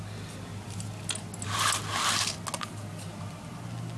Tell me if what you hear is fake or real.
real